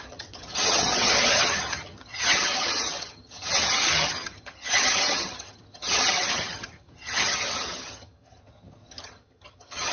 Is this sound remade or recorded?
remade